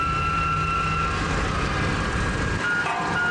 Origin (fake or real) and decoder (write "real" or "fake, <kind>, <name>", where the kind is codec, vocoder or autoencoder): real